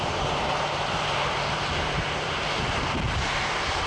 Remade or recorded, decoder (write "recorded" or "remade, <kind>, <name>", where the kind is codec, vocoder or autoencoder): remade, vocoder, BigVGAN v2